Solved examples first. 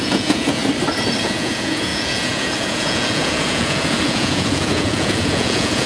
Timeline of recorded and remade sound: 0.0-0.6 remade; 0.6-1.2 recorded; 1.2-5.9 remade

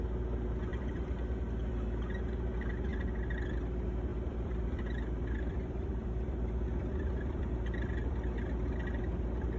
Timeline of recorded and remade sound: 0.0-0.7 recorded; 0.7-1.7 remade; 1.7-4.1 recorded; 4.1-9.0 remade; 9.0-9.6 recorded

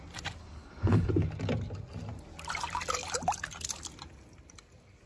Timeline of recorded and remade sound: 0.0-0.4 recorded; 0.4-1.1 remade; 1.1-5.1 recorded

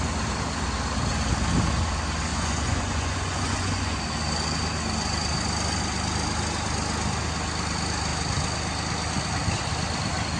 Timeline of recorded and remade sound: 0.0-2.3 recorded; 2.3-4.0 remade; 4.0-10.4 recorded

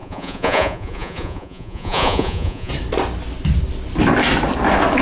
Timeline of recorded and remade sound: 0.0-2.7 remade; 2.7-5.0 recorded

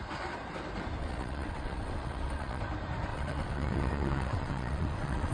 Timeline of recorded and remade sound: 0.0-1.0 recorded; 1.0-2.6 remade; 2.6-3.1 recorded; 3.1-5.3 remade

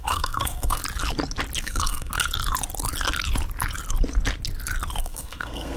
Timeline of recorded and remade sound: 0.0-0.8 remade; 0.8-1.6 recorded; 1.6-2.1 remade; 2.1-5.0 recorded; 5.0-5.8 remade

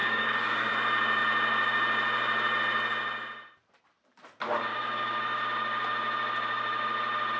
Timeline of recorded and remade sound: 0.0-0.7 remade; 0.7-4.7 recorded; 4.7-5.4 remade; 5.4-7.4 recorded